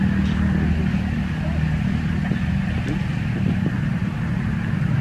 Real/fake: fake